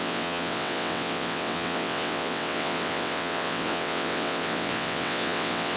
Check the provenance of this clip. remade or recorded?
remade